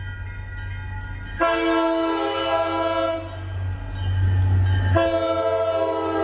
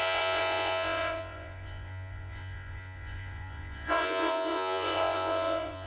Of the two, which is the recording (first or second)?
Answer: first